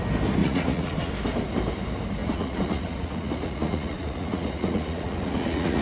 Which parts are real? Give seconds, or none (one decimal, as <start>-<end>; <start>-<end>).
0.0-0.4; 1.1-2.2